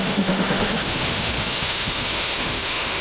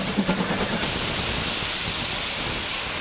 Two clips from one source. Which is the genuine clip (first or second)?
second